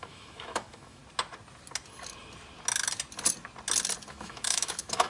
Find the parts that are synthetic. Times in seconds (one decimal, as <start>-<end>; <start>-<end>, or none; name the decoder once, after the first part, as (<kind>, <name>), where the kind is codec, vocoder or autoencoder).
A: 0.0-1.0 (autoencoder, DAC-VAE); 4.1-5.1